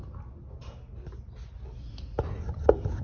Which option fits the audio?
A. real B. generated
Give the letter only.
A